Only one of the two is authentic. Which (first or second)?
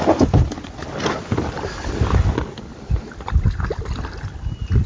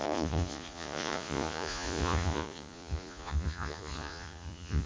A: first